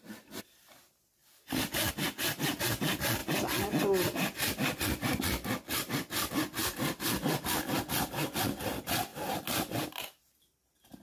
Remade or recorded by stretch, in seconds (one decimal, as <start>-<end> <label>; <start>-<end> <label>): 0.0-9.1 recorded; 9.1-10.4 remade; 10.4-11.0 recorded